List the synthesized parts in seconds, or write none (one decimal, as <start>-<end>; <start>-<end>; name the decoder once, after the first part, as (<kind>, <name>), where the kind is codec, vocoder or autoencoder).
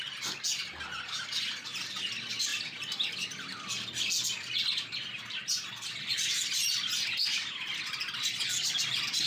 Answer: none